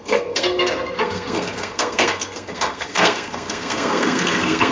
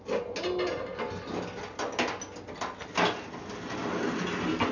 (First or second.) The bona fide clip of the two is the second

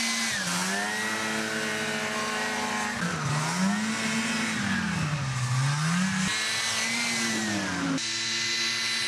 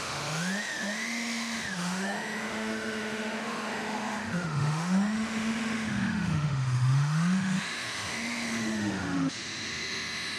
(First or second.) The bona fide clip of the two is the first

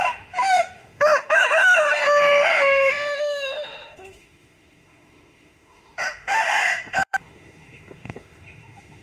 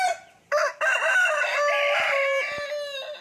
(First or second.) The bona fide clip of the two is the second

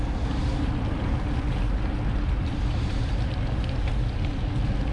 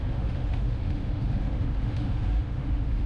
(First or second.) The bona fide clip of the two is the first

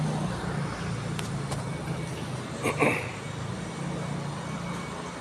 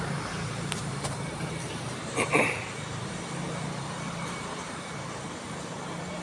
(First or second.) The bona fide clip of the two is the first